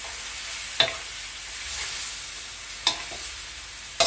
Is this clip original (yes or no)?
yes